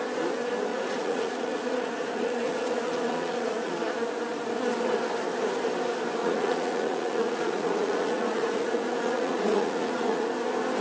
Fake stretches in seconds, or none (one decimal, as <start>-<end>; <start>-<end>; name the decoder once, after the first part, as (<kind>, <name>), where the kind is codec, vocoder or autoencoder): 0.7-3.7 (vocoder, Vocos); 6.2-10.2